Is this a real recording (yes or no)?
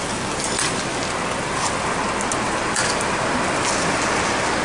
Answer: yes